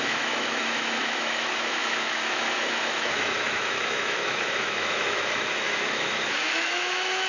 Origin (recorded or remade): remade